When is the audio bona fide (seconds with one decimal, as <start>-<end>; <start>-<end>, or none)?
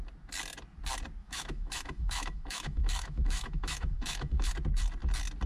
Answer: 0.0-1.2; 4.5-5.5